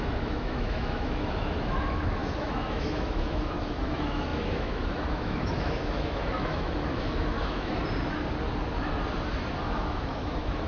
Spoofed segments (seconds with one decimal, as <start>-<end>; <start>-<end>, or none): 0.0-7.8; 9.6-10.7